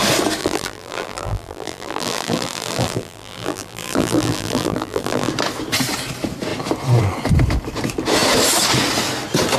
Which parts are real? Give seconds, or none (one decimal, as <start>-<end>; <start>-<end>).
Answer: 0.0-0.4; 5.3-9.6